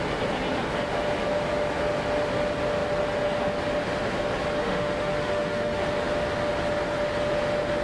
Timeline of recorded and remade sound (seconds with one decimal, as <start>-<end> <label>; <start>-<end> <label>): 0.0-4.6 recorded; 4.6-5.8 remade; 5.8-7.8 recorded